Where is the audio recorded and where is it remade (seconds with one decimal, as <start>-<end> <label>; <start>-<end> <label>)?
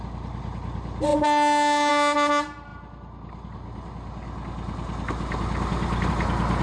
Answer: 0.0-6.6 recorded